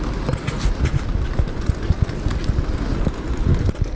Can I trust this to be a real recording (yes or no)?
yes